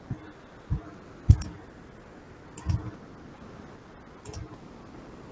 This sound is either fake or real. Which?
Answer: real